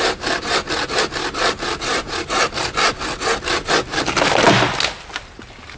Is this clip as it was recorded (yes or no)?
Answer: yes